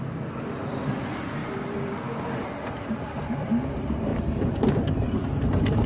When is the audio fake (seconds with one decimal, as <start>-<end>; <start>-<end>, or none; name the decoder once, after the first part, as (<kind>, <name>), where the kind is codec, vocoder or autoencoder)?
1.4-1.9 (vocoder, BigVGAN v2); 4.1-5.9